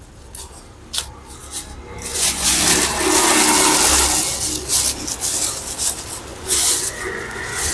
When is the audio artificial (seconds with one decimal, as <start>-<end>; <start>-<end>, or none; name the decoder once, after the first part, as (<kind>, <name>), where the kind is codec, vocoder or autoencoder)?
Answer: 2.1-2.6 (vocoder, Vocos); 6.3-7.7